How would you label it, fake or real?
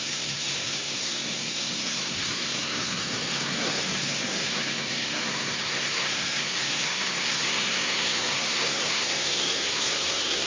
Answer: fake